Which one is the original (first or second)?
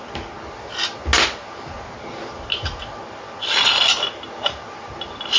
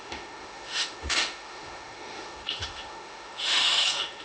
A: first